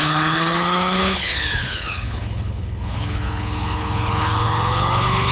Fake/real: fake